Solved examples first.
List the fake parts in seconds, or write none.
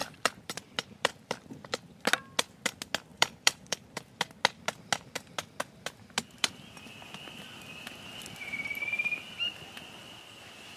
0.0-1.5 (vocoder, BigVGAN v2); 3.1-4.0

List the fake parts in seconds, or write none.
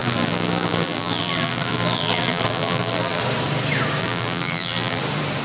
0.0-3.2 (vocoder, BigVGAN v2); 4.0-5.0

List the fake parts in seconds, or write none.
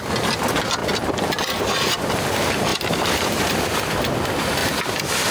0.8-2.2 (vocoder, BigVGAN v2); 2.7-3.8; 4.6-5.3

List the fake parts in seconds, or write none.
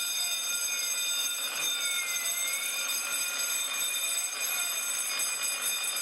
1.2-4.8 (vocoder, BigVGAN v2)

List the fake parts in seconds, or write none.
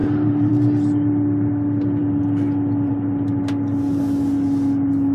0.0-0.5 (vocoder, BigVGAN v2)